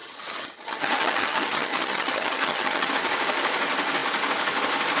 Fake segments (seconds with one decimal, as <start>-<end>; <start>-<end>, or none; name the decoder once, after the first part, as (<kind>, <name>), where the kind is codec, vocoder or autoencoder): 0.0-2.9 (vocoder, HiFi-GAN)